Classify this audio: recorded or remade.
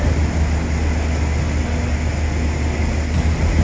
recorded